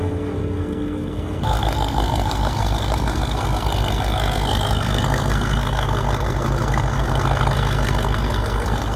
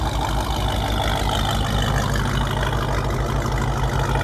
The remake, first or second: first